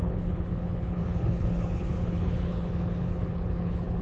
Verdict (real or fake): fake